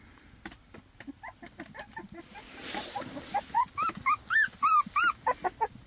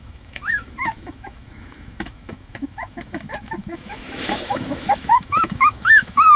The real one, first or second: first